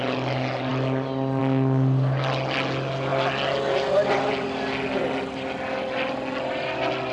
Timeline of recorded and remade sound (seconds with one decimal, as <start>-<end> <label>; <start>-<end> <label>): 0.0-7.1 recorded